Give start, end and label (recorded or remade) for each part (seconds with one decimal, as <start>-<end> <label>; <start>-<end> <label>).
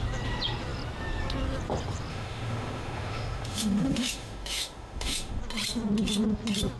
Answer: 0.0-2.1 recorded; 2.1-5.4 remade; 5.4-6.8 recorded